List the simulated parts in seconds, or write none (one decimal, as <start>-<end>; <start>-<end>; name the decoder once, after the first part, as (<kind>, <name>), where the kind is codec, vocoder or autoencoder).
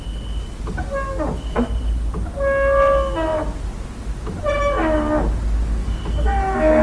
5.8-6.8 (codec, SNAC)